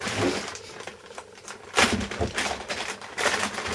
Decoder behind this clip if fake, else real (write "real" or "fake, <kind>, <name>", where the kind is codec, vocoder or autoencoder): real